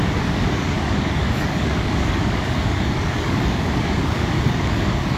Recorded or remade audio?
remade